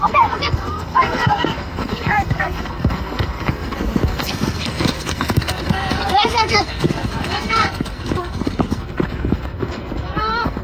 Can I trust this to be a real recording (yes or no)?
no